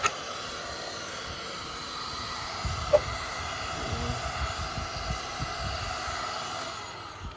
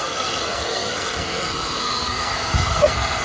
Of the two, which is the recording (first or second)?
first